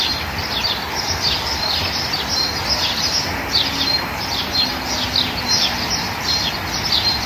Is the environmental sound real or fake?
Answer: real